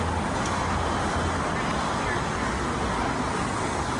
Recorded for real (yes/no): yes